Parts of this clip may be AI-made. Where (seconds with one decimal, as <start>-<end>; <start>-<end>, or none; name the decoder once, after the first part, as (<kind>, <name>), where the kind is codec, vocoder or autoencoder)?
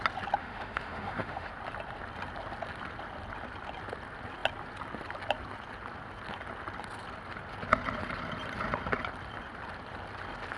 0.4-1.5 (autoencoder, DAC-VAE)